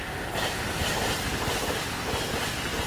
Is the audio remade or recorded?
recorded